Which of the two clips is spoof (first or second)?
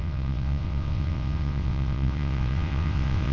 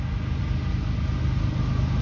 first